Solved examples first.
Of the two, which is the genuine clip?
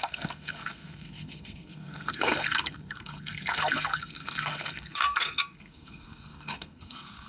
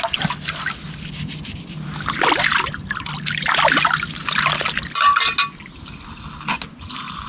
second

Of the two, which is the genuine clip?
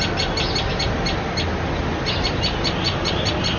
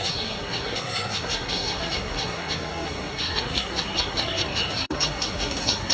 first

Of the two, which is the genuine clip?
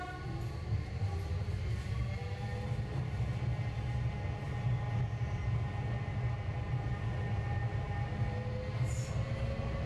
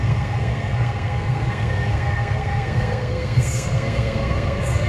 first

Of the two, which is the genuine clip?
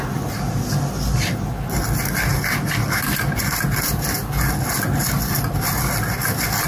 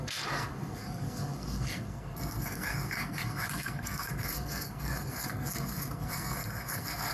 first